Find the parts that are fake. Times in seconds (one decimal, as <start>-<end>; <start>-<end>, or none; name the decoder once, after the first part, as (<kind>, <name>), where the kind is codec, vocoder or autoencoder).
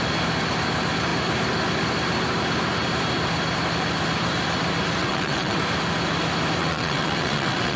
5.0-5.6 (vocoder, WaveNeXt); 6.6-7.8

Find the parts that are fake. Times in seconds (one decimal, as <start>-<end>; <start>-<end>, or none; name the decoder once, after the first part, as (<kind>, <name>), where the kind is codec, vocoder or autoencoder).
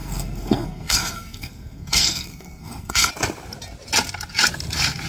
0.0-3.1 (codec, SNAC)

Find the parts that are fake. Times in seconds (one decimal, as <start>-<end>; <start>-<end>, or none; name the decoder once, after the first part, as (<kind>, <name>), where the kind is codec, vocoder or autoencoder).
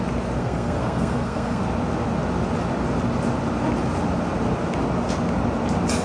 0.4-1.6 (codec, SNAC)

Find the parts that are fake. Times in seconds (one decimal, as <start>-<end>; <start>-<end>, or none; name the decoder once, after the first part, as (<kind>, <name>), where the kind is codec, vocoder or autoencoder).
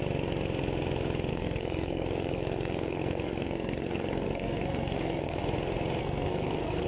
1.3-5.4 (codec, SNAC); 6.0-6.9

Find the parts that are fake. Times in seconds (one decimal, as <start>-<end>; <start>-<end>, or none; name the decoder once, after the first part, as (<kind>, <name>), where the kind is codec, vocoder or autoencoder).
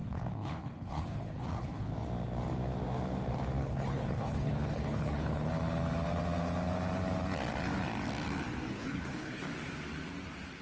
0.0-1.9 (codec, HILCodec); 3.6-5.5; 8.7-9.5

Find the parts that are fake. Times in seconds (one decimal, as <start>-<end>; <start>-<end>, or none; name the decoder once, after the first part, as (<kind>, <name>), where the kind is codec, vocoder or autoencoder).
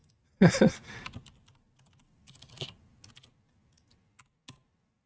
none